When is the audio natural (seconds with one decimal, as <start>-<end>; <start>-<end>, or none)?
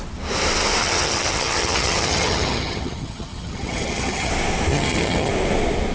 0.0-0.8; 4.3-4.7; 5.3-5.9